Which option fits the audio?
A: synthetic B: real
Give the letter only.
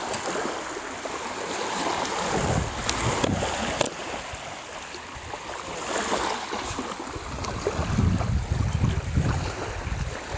B